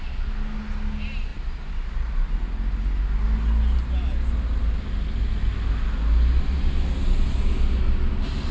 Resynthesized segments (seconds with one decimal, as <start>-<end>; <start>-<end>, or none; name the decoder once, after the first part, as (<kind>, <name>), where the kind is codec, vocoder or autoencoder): none